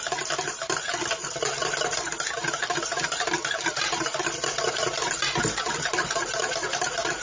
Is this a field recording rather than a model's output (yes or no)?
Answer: no